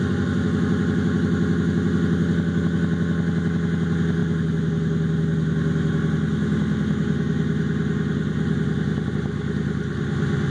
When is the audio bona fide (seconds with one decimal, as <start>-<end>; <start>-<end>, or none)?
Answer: 0.0-10.5